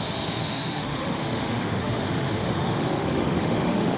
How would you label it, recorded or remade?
remade